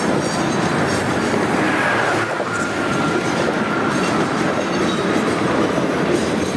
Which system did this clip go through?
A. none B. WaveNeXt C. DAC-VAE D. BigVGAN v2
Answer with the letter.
D